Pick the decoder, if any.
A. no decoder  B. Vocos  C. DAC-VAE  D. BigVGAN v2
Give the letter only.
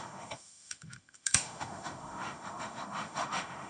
C